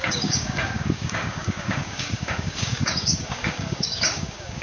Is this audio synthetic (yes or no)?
yes